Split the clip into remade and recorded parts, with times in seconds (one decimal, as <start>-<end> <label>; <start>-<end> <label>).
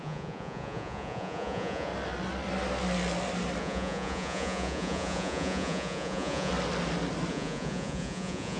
0.0-1.9 remade; 1.9-3.6 recorded; 3.6-6.5 remade; 6.5-7.3 recorded; 7.3-8.6 remade